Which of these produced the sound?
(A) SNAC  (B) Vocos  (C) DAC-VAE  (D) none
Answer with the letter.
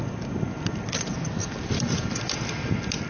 D